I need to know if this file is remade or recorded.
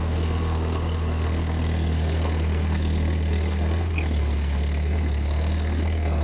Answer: remade